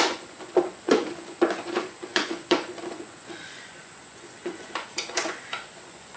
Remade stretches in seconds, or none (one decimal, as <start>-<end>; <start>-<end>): 0.0-6.2